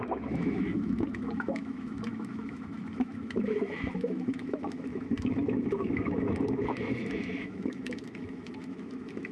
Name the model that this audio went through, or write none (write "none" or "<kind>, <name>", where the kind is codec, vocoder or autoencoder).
autoencoder, DAC-VAE